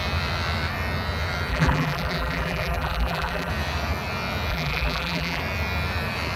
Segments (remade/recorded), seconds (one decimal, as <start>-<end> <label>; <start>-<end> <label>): 0.0-1.5 recorded; 1.5-3.5 remade; 3.5-4.5 recorded; 4.5-5.4 remade; 5.4-6.4 recorded